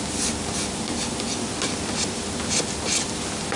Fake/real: real